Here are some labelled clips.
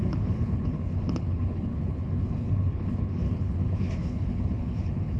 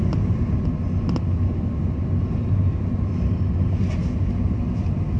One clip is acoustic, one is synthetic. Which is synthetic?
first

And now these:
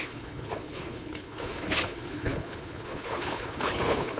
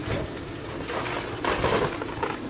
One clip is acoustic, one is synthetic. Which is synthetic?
first